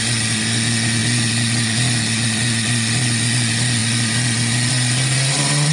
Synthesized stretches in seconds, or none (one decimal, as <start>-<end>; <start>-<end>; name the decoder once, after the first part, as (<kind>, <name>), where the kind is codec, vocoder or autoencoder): none

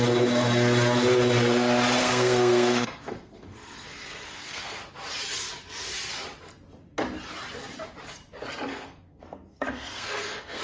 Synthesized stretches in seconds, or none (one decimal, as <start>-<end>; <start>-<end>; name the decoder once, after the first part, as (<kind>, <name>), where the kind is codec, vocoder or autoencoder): 2.0-4.8 (codec, SNAC); 8.7-10.6

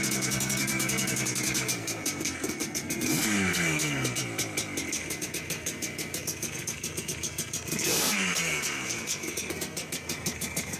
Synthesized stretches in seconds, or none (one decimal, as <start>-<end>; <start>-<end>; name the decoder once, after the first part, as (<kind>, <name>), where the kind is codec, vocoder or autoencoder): 0.0-4.2 (codec, SNAC); 4.9-10.8

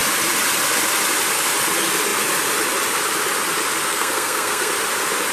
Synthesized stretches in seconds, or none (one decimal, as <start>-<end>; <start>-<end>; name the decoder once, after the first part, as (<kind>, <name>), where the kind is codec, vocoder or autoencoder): 3.9-4.7 (codec, SNAC)